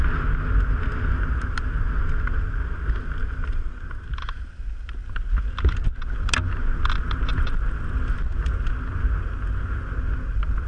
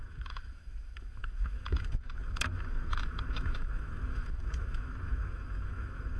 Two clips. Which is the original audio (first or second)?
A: first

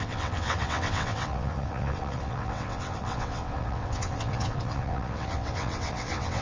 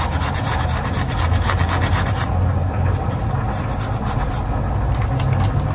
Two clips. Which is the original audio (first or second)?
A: second